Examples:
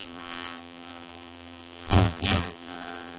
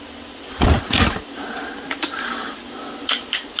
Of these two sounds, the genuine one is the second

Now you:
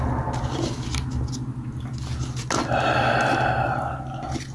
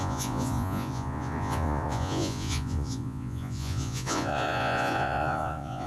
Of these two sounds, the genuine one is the first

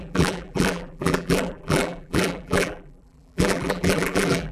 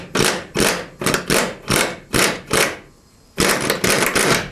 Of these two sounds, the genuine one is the second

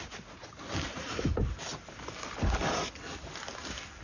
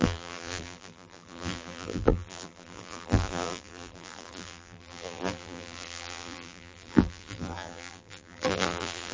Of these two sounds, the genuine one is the first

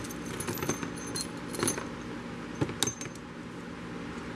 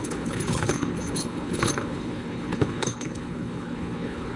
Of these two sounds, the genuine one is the first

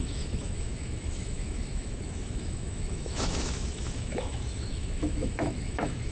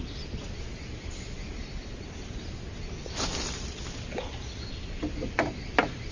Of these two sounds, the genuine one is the second